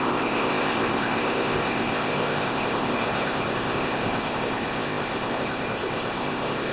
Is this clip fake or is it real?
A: fake